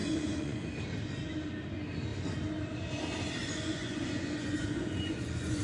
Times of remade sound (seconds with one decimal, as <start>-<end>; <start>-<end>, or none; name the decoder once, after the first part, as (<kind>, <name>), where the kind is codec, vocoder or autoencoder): 0.0-0.7 (vocoder, Vocos); 3.4-5.6